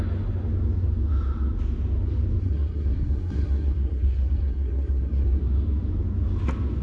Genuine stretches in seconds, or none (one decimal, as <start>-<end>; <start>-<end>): 0.0-2.4; 5.4-6.8